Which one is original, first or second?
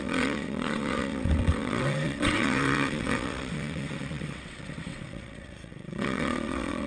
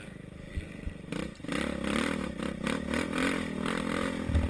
second